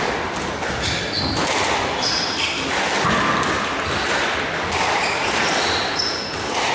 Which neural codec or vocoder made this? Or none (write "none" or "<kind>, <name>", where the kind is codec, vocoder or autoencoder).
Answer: none